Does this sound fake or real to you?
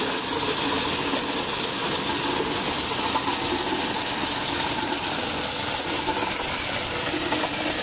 real